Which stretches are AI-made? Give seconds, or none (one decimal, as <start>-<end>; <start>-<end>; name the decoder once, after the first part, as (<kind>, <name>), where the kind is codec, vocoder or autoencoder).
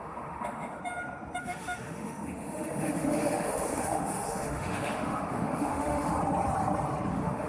0.0-0.8 (autoencoder, DAC-VAE); 1.4-6.1; 7.1-7.5